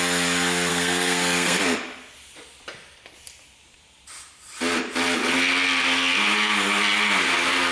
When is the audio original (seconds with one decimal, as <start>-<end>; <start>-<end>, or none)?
0.0-0.7; 1.6-7.7